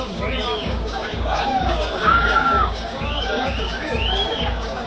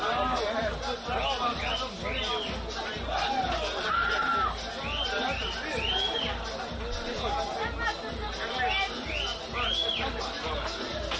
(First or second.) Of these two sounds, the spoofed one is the first